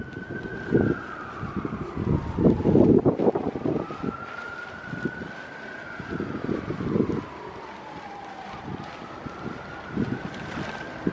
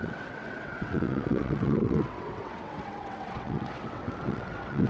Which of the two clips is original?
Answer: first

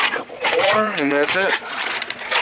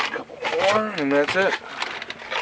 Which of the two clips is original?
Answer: second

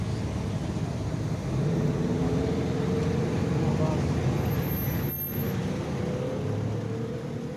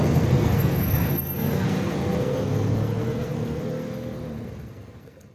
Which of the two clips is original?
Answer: first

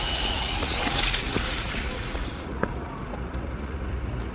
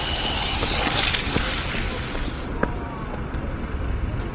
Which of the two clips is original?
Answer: second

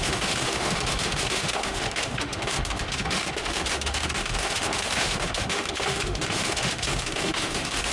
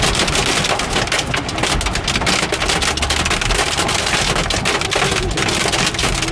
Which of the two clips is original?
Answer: second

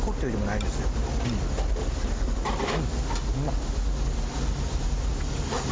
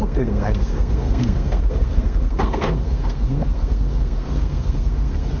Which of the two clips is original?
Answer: first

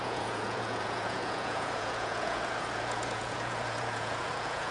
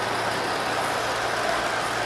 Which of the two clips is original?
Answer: second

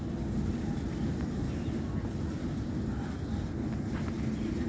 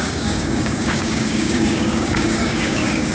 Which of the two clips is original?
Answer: first